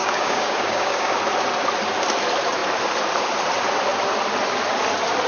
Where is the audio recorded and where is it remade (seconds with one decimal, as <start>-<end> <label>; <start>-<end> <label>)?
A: 0.0-1.2 remade; 1.2-5.3 recorded